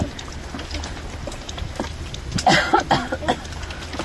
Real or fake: real